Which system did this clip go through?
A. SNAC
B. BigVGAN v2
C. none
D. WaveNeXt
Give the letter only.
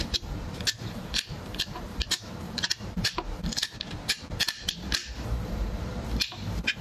B